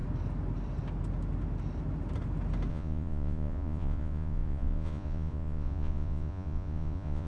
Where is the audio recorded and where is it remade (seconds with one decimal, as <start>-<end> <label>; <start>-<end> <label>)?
0.0-2.7 recorded; 2.7-7.3 remade